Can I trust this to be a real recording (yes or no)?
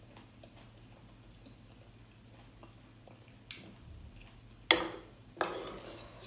yes